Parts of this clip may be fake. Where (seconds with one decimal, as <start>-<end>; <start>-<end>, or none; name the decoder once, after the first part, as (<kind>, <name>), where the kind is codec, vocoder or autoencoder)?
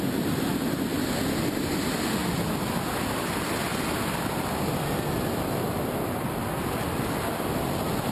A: none